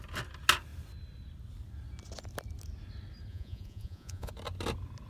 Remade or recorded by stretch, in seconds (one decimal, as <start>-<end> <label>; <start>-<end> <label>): 0.0-3.3 recorded; 3.3-4.3 remade; 4.3-5.1 recorded